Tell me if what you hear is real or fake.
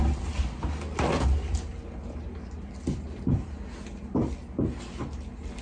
real